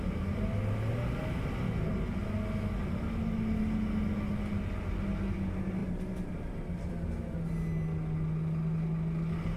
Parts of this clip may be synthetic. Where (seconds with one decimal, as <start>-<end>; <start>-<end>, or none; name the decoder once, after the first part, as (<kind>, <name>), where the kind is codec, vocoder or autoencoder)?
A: 5.8-6.9 (vocoder, BigVGAN v2)